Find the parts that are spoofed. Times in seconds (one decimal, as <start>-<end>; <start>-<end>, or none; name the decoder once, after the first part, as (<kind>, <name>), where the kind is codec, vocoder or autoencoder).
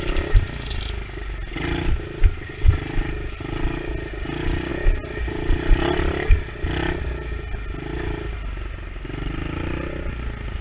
none